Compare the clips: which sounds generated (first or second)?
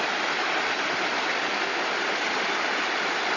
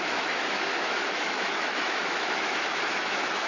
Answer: second